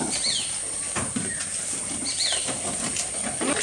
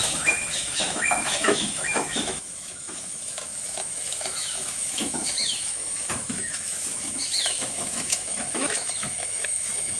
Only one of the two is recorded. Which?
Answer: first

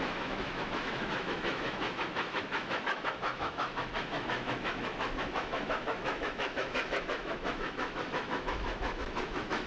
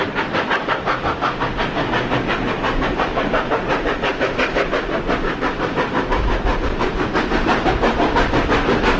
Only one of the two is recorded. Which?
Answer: second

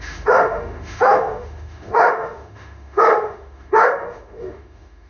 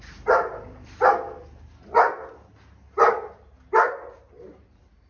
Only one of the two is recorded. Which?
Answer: second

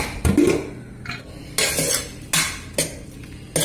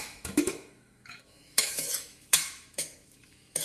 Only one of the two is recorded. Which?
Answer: first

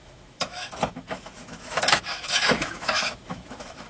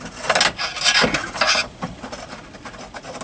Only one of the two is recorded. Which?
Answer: second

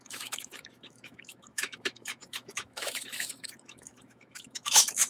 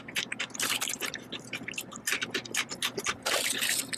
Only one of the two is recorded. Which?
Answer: second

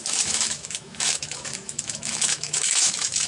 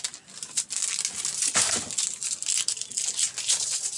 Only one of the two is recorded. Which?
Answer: second